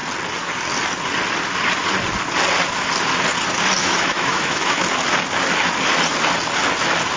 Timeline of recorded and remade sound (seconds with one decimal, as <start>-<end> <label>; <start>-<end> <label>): 0.0-3.8 recorded; 3.8-4.8 remade; 4.8-7.2 recorded